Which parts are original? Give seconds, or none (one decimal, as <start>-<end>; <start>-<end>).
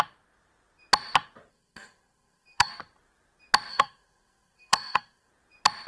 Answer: 0.0-1.5; 2.7-3.7; 5.3-5.9